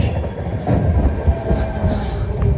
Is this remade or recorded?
recorded